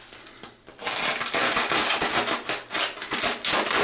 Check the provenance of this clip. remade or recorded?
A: recorded